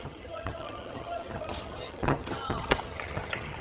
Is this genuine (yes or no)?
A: no